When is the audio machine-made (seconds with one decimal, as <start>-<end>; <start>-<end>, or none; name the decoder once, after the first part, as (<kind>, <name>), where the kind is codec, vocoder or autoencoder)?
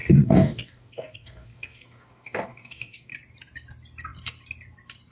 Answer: 0.0-3.1 (codec, DAC)